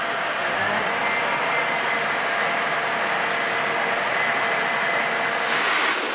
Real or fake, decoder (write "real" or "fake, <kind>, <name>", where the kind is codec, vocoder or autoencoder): real